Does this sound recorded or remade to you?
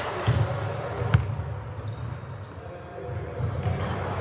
recorded